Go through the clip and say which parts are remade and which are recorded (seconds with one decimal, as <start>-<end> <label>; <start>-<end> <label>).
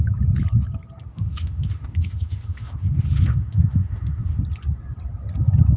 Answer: 0.0-1.1 recorded; 1.1-4.4 remade; 4.4-5.8 recorded